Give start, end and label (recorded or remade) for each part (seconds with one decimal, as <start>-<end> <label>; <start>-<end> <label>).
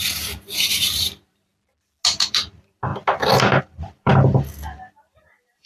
0.0-1.5 remade; 1.5-2.3 recorded; 2.3-2.9 remade; 2.9-3.6 recorded; 3.6-4.1 remade; 4.1-5.0 recorded; 5.0-5.7 remade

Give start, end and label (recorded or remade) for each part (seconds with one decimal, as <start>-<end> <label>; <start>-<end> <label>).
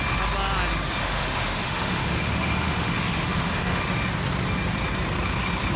0.0-1.0 recorded; 1.0-3.8 remade; 3.8-5.8 recorded